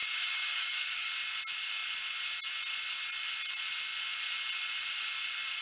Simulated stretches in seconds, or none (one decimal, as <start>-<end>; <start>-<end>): 0.0-1.1